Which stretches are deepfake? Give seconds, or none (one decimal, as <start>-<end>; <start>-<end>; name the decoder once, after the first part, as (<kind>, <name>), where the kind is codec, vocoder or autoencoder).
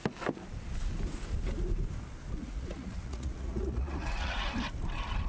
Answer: 2.4-4.5 (vocoder, Vocos)